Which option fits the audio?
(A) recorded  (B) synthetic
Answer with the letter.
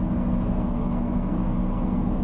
B